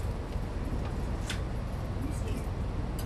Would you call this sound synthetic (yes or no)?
no